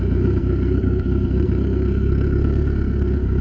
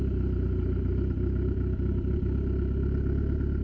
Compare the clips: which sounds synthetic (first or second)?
first